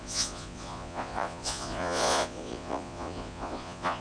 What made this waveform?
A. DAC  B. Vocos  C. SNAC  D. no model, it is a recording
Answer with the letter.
B